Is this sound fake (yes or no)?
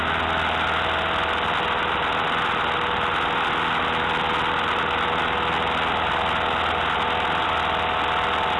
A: no